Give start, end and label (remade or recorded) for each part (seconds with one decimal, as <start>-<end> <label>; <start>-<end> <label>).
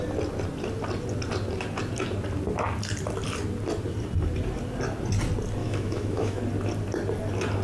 0.0-5.6 recorded; 5.6-6.4 remade; 6.4-7.6 recorded